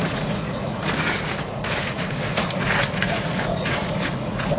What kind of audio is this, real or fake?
fake